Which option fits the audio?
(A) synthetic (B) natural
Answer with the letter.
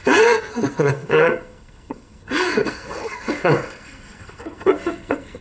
A